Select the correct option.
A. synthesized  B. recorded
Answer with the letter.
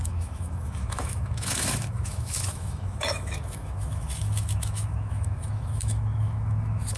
A